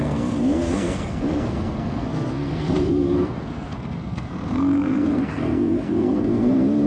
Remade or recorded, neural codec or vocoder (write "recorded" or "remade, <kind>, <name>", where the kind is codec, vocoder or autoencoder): remade, codec, SNAC